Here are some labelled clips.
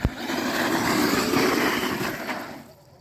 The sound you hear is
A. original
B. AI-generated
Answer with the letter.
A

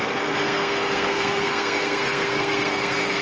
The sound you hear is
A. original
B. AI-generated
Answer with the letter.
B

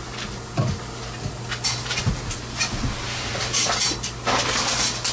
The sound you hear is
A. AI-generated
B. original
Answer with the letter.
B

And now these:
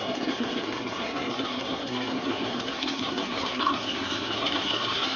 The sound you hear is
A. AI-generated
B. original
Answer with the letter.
A